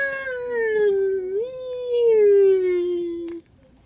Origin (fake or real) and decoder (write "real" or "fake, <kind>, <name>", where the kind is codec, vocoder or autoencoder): real